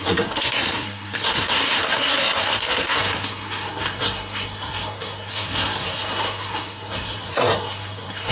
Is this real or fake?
fake